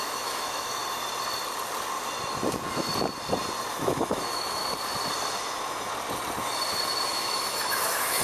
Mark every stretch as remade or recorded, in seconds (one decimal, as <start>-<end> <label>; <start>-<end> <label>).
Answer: 0.0-0.8 remade; 0.8-3.7 recorded; 3.7-4.6 remade; 4.6-5.4 recorded; 5.4-5.9 remade; 5.9-7.1 recorded; 7.1-8.2 remade